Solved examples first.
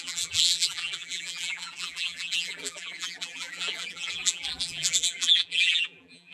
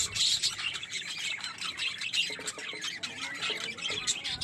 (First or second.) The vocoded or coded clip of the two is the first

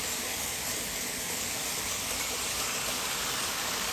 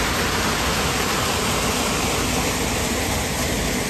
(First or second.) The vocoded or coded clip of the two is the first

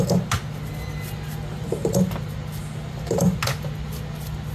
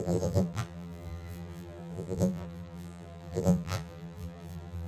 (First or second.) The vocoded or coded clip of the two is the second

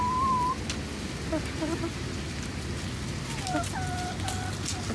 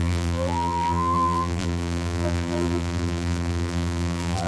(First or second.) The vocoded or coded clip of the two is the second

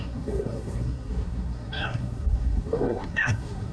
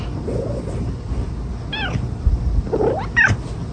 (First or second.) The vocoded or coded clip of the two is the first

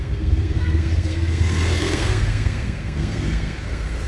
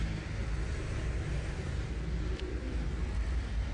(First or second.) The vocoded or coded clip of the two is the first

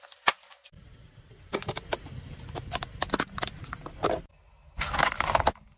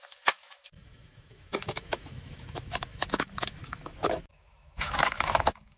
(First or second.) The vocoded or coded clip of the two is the second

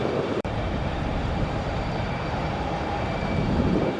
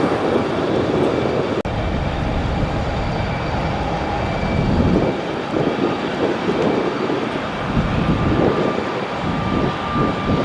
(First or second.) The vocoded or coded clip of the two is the first